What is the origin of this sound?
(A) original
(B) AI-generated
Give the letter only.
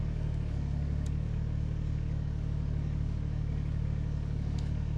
B